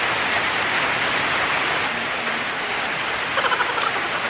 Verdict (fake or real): real